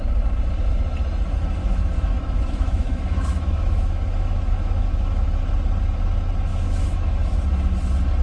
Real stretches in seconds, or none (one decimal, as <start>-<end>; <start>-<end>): 0.0-1.6; 5.4-6.5; 7.4-8.2